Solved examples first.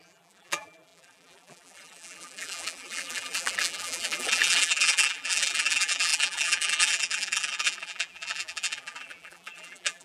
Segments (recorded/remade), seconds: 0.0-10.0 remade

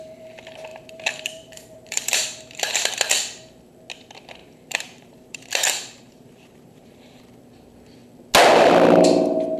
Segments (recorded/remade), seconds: 0.0-0.7 recorded; 0.7-2.9 remade; 2.9-4.4 recorded; 4.4-7.2 remade; 7.2-9.6 recorded

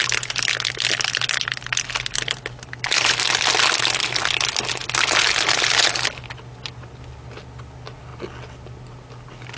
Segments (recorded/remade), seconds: 0.0-9.6 recorded

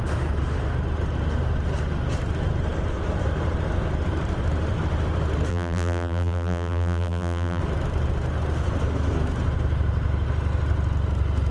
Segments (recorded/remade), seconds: 0.0-5.5 recorded; 5.5-7.6 remade; 7.6-11.5 recorded

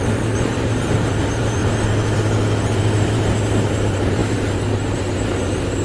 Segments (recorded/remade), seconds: 0.0-1.6 remade; 1.6-2.8 recorded; 2.8-5.8 remade